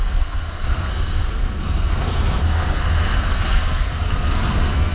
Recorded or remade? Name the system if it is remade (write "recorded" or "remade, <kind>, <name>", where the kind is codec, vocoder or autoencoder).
remade, codec, SNAC